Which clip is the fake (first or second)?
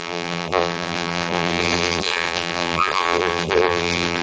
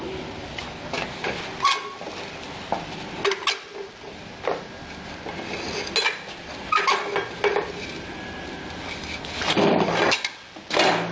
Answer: first